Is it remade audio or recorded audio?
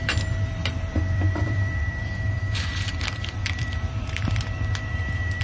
remade